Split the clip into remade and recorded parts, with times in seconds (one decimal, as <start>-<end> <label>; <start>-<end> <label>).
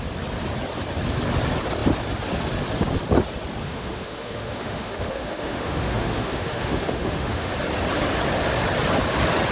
0.0-3.6 recorded; 3.6-7.5 remade; 7.5-9.5 recorded